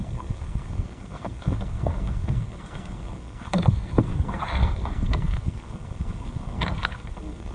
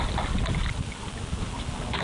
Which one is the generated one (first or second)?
first